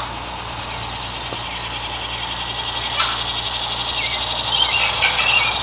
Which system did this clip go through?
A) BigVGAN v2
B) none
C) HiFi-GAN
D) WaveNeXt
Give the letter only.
B